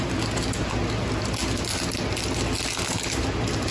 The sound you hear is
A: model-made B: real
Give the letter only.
B